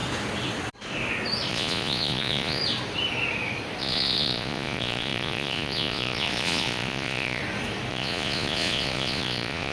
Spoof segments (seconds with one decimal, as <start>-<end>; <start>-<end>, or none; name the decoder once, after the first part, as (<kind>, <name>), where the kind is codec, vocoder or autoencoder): 1.5-2.6 (vocoder, Vocos); 3.8-7.4; 7.9-9.7